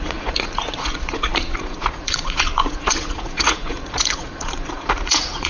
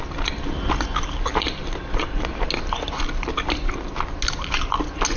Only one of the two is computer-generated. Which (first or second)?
first